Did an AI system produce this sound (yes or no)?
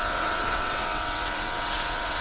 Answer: yes